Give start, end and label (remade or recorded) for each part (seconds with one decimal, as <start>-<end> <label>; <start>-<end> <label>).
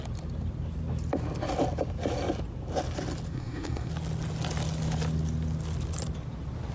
0.0-3.3 recorded; 3.3-3.9 remade; 3.9-6.7 recorded